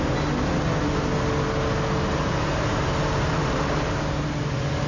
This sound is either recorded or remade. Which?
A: recorded